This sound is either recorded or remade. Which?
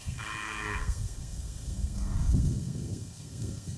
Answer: remade